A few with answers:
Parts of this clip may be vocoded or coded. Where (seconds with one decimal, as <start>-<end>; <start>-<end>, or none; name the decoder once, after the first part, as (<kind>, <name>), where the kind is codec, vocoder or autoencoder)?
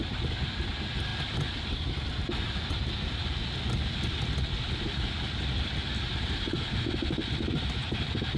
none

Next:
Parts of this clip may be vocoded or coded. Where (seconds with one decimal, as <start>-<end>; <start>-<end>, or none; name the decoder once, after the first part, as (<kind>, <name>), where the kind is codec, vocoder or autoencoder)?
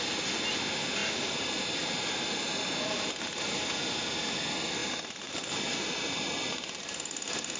1.0-3.6 (vocoder, BigVGAN v2); 4.8-6.8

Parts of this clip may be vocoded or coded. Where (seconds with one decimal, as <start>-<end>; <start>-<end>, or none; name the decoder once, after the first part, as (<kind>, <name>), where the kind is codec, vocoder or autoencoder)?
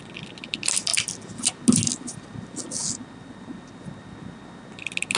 none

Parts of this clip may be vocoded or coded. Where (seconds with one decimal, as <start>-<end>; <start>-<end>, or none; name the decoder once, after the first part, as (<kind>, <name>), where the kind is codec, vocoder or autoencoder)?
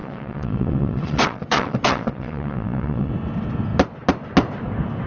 0.0-3.1 (vocoder, WaveNeXt)